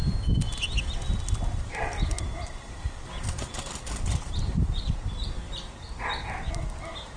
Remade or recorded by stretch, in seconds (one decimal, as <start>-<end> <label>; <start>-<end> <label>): 0.0-4.6 recorded; 4.6-6.0 remade; 6.0-7.2 recorded